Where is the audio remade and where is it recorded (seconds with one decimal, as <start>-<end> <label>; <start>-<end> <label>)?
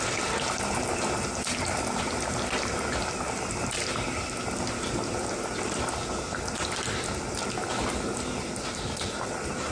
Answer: 0.0-6.0 remade; 6.0-7.9 recorded; 7.9-9.7 remade